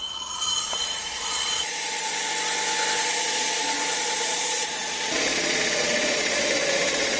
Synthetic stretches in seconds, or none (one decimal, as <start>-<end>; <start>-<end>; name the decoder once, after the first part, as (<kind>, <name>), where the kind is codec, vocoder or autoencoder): 0.0-2.3 (vocoder, Vocos); 3.0-7.2